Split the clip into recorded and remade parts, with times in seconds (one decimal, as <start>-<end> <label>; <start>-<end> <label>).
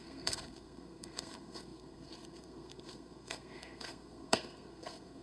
0.0-5.2 remade